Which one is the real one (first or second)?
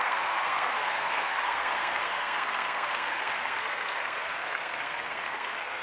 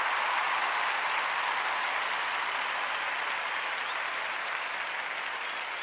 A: second